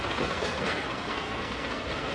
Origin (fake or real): fake